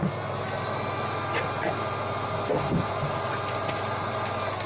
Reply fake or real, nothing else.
real